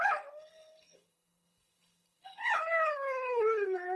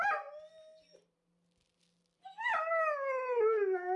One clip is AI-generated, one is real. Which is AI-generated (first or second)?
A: first